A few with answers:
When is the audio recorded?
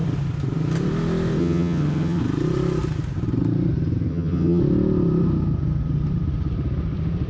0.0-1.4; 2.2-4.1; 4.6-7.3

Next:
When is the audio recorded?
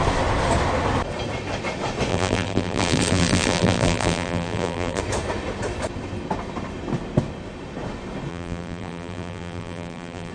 0.0-2.1; 5.0-8.3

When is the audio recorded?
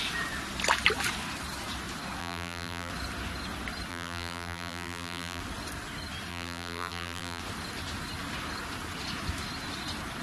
0.0-2.2; 2.9-3.9; 5.4-6.3; 7.4-10.2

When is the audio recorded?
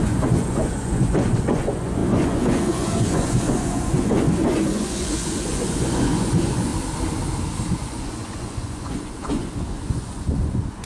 6.7-7.7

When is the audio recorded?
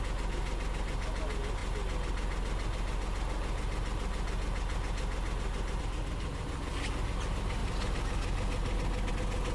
0.0-9.5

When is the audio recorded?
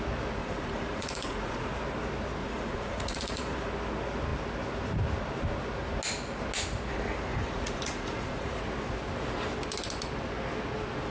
0.0-0.4; 1.7-2.4; 3.7-7.3; 8.6-11.1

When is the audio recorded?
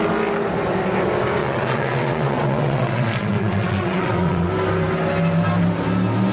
0.0-1.4; 4.5-6.3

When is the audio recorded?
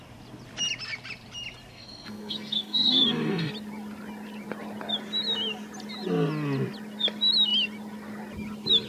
0.0-1.7; 3.5-8.9